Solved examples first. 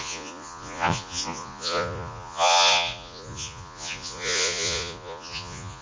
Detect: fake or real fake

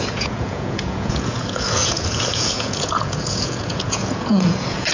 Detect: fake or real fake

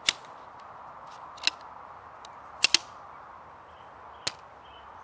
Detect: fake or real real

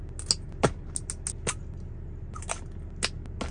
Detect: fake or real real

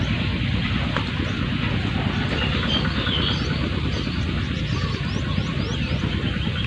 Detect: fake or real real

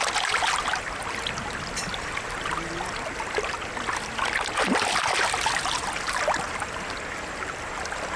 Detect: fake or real real